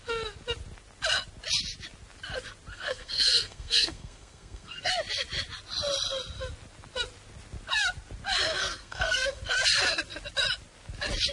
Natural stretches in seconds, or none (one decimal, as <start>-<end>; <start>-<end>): 0.0-2.7; 4.9-8.6; 9.4-11.3